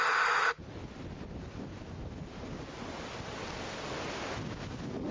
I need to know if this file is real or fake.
real